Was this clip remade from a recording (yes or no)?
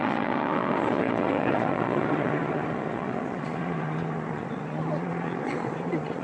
yes